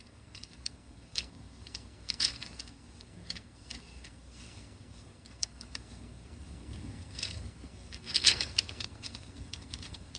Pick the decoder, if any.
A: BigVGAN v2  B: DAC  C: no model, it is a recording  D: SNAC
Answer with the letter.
D